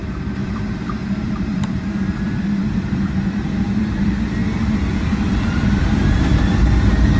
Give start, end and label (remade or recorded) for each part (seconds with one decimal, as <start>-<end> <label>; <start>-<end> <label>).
0.0-3.5 remade; 3.5-7.2 recorded